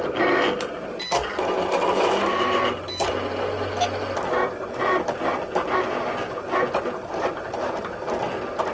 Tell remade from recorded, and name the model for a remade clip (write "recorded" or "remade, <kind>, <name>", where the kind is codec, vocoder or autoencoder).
recorded